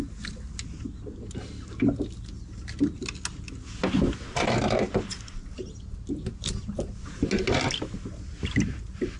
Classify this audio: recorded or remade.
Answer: recorded